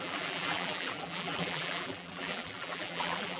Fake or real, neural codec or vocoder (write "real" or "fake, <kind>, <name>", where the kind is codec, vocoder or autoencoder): fake, vocoder, BigVGAN v2